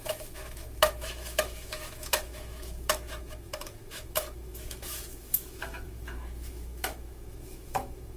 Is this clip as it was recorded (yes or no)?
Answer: no